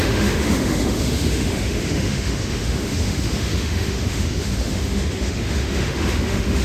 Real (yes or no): no